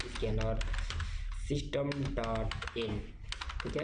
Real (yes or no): yes